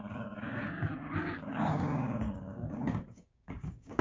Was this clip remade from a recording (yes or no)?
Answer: yes